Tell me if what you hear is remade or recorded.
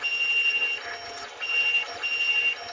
recorded